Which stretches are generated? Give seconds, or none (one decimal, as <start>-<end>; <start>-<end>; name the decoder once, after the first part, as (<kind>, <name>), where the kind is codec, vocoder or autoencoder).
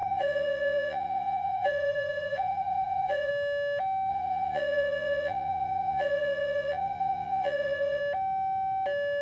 0.0-3.3 (vocoder, Vocos); 4.1-8.0